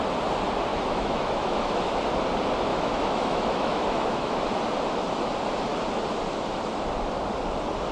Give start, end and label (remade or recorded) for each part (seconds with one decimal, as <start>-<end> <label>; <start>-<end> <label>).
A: 0.0-0.7 recorded; 0.7-2.0 remade; 2.0-2.7 recorded; 2.7-4.4 remade; 4.4-7.9 recorded

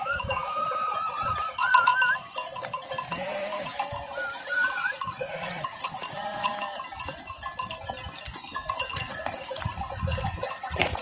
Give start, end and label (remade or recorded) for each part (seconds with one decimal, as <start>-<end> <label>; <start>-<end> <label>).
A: 0.0-1.9 remade; 1.9-4.4 recorded; 4.4-6.5 remade; 6.5-8.3 recorded; 8.3-11.0 remade

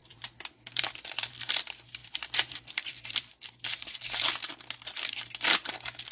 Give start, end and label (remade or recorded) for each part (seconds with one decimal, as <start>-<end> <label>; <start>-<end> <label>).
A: 0.0-1.5 remade; 1.5-2.0 recorded; 2.0-4.0 remade; 4.0-6.1 recorded

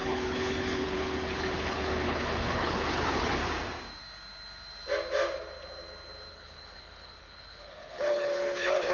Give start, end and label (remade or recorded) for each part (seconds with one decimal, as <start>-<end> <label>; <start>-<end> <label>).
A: 0.0-3.4 remade; 3.4-6.3 recorded; 6.3-8.9 remade

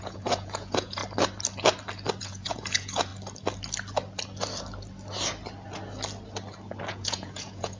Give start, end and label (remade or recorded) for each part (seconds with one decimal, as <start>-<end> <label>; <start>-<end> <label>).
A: 0.0-1.0 remade; 1.0-2.2 recorded; 2.2-3.1 remade; 3.1-6.9 recorded; 6.9-7.8 remade

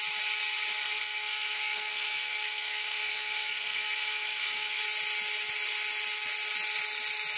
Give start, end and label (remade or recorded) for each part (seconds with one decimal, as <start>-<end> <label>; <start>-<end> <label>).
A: 0.0-0.8 recorded; 0.8-4.8 remade; 4.8-7.4 recorded

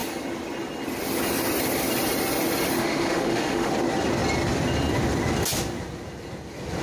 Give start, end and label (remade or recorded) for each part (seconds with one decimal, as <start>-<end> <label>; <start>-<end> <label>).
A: 0.0-2.8 recorded; 2.8-3.7 remade; 3.7-6.8 recorded

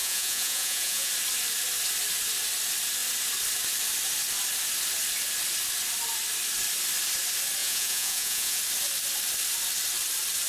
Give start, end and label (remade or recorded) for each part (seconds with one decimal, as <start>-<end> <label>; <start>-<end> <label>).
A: 0.0-1.1 remade; 1.1-7.6 recorded; 7.6-8.6 remade; 8.6-10.5 recorded